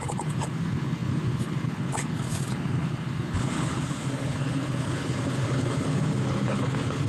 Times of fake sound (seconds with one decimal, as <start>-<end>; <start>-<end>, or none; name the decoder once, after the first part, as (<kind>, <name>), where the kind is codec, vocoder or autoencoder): 0.0-7.1 (codec, HILCodec)